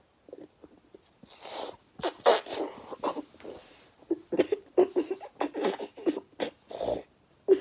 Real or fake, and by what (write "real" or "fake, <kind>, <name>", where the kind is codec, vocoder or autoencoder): real